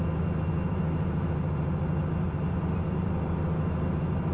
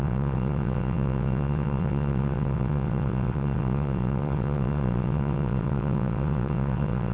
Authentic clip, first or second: first